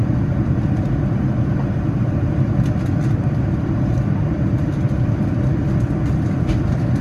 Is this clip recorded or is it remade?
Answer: remade